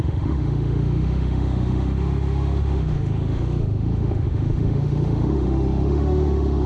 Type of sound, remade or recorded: remade